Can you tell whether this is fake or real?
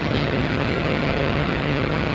fake